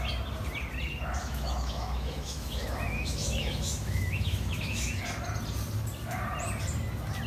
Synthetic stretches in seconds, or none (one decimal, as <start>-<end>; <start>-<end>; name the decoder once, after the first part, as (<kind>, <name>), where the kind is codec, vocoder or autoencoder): 1.2-5.0 (autoencoder, DAC-VAE)